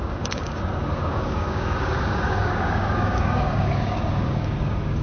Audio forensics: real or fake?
fake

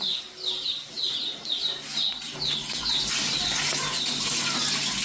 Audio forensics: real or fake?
real